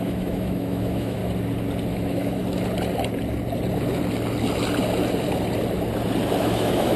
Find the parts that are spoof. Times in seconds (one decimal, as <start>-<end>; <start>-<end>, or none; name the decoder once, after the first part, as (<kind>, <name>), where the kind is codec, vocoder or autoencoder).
0.0-1.2 (autoencoder, DAC-VAE); 1.9-2.4; 6.4-7.0